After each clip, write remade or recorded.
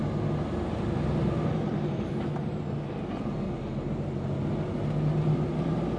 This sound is recorded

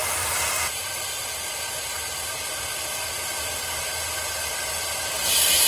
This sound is recorded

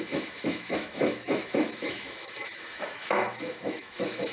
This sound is remade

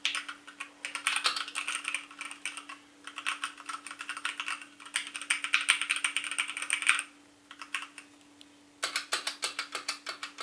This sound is recorded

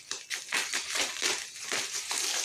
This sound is recorded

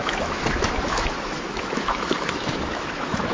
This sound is remade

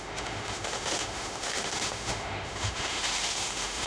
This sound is remade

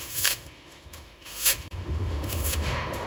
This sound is remade